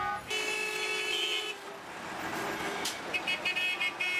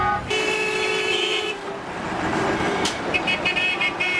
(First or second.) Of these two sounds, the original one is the first